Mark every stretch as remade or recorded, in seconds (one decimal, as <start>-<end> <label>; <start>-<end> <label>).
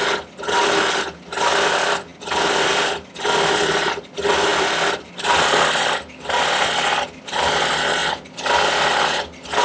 0.0-4.5 recorded; 4.5-5.1 remade; 5.1-9.6 recorded